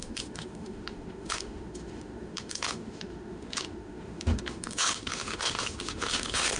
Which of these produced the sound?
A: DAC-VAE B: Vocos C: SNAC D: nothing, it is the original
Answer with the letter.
A